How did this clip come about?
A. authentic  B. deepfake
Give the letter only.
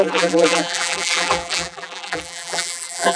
B